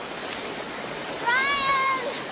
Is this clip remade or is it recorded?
recorded